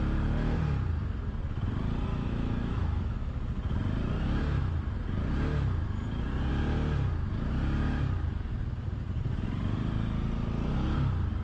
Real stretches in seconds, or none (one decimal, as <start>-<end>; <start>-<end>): 0.0-2.1; 3.3-11.4